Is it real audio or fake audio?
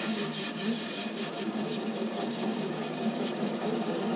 fake